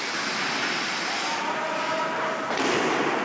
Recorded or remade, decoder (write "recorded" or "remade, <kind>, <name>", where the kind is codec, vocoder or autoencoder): recorded